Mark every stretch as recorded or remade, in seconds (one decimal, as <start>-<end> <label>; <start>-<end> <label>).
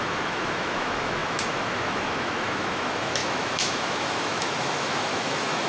0.0-5.7 remade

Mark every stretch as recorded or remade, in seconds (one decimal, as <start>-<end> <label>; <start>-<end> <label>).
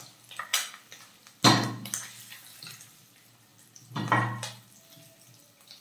0.0-5.8 recorded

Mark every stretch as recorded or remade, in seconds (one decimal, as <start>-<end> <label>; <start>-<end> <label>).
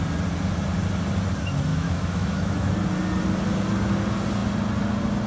0.0-1.7 recorded; 1.7-2.7 remade; 2.7-5.3 recorded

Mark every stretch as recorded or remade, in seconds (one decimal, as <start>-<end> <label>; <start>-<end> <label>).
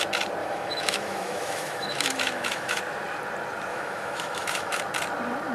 0.0-0.4 recorded; 0.4-2.8 remade; 2.8-3.7 recorded; 3.7-4.8 remade; 4.8-5.5 recorded